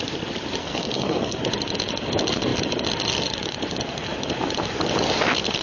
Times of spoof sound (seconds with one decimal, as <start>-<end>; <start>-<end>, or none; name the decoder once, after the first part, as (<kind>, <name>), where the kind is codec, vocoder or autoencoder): 0.6-1.4 (codec, SNAC)